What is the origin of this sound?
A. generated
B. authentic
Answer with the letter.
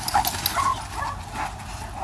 B